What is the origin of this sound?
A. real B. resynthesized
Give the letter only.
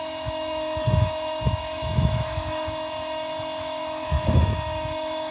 B